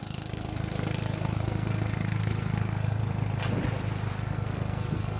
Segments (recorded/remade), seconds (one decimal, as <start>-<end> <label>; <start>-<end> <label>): 0.0-3.0 remade; 3.0-4.1 recorded; 4.1-5.2 remade